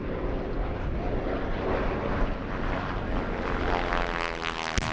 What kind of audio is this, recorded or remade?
recorded